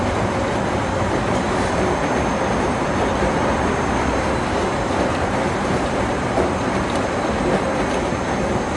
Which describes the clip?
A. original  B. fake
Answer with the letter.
B